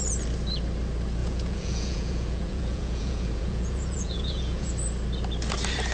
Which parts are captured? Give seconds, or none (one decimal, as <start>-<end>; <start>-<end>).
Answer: 0.0-1.2; 4.7-5.9